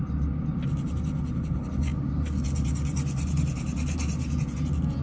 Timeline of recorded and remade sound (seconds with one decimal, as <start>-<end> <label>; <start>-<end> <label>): 0.0-5.0 recorded